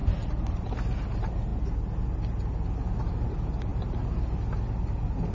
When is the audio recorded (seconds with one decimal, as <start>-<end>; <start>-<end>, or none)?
0.7-5.3